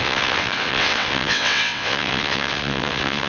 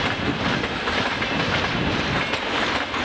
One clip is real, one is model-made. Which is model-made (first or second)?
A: first